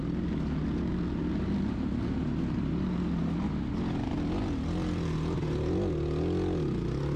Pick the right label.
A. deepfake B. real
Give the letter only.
B